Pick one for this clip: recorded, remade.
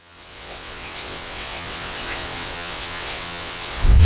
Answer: remade